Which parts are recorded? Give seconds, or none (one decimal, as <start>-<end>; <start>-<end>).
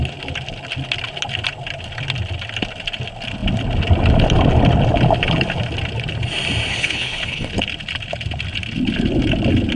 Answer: 0.0-6.7; 7.5-9.8